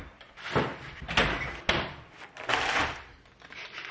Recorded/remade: recorded